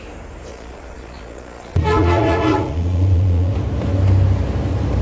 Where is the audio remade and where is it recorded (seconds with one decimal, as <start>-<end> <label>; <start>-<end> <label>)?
0.0-0.5 recorded; 0.5-3.5 remade; 3.5-5.0 recorded